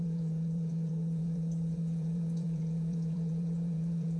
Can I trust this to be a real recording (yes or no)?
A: no